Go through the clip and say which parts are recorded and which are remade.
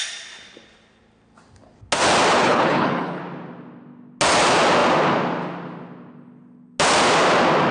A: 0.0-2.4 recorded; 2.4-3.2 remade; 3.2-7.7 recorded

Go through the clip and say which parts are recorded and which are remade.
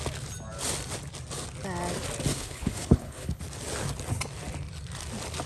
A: 0.0-2.3 recorded; 2.3-3.4 remade; 3.4-5.5 recorded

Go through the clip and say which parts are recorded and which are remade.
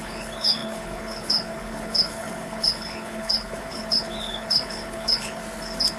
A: 0.0-5.4 remade; 5.4-6.0 recorded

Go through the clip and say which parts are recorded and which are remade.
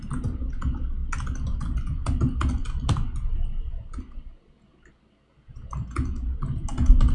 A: 0.0-7.1 recorded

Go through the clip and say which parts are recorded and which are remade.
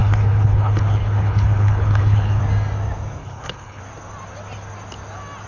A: 0.0-2.4 remade; 2.4-3.2 recorded; 3.2-3.8 remade; 3.8-5.5 recorded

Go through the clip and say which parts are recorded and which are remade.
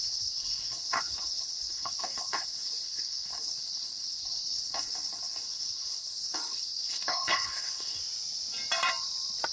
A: 0.0-8.0 remade; 8.0-9.5 recorded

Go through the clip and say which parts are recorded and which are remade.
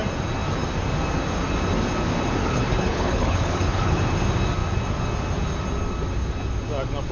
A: 0.0-2.4 recorded; 2.4-4.0 remade; 4.0-7.1 recorded